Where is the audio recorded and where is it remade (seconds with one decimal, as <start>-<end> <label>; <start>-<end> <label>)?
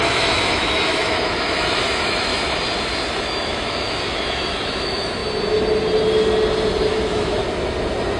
0.0-2.3 remade; 2.3-3.1 recorded; 3.1-5.2 remade; 5.2-6.9 recorded; 6.9-7.4 remade; 7.4-8.2 recorded